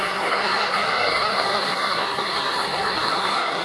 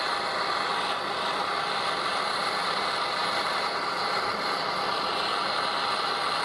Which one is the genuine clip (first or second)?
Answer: second